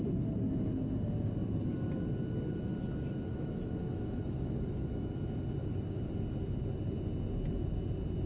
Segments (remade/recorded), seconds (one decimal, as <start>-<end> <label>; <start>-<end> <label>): 0.0-3.3 recorded; 3.3-5.1 remade; 5.1-5.6 recorded; 5.6-6.1 remade; 6.1-8.3 recorded